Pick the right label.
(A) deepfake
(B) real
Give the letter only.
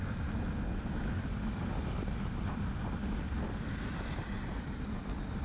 B